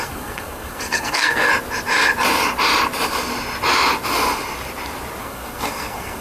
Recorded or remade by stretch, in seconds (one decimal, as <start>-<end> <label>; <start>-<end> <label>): 0.0-1.5 remade; 1.5-5.2 recorded; 5.2-6.2 remade